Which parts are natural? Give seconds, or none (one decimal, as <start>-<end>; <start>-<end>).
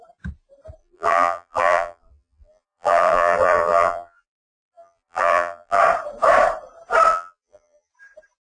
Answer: 0.0-0.8; 5.8-7.1; 7.9-8.4